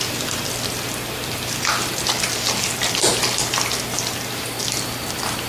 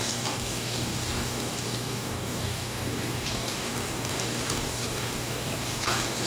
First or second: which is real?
first